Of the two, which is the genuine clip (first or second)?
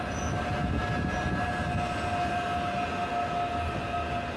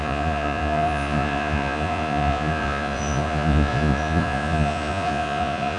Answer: first